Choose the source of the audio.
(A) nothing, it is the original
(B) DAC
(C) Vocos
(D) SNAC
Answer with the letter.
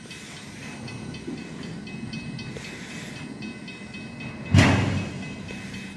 A